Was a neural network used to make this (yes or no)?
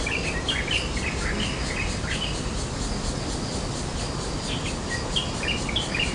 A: no